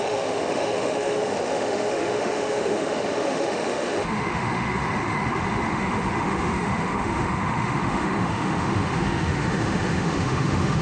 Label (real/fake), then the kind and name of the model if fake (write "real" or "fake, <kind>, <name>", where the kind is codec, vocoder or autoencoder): fake, autoencoder, DAC-VAE